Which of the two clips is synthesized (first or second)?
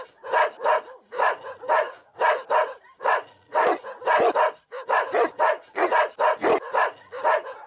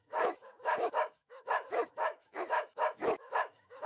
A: second